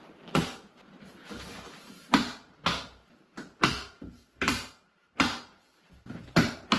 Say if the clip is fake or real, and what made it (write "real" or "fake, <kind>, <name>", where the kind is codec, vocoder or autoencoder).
fake, vocoder, BigVGAN v2